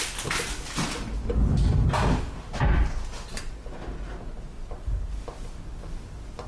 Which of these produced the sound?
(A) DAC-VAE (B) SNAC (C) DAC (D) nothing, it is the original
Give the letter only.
D